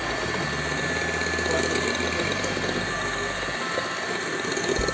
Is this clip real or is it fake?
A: real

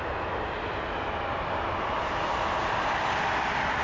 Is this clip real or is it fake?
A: real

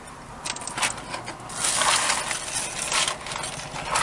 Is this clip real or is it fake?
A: real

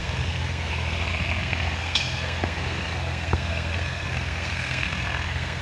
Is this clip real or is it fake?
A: fake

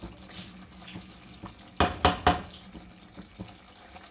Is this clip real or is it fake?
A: real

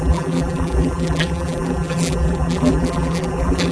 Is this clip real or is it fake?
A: fake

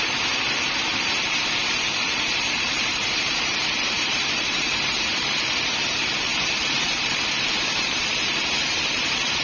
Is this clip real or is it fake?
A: fake